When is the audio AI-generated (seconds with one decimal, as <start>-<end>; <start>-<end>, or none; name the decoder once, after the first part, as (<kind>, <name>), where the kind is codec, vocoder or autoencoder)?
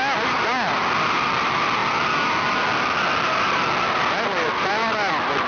none